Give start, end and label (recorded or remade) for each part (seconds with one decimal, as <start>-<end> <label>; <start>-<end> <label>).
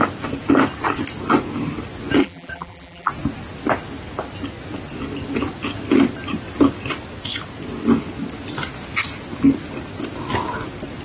0.0-2.2 recorded; 2.2-3.1 remade; 3.1-11.0 recorded